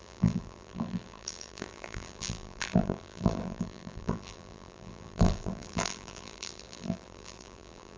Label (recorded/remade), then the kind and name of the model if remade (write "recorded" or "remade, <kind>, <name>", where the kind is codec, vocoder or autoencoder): remade, vocoder, BigVGAN v2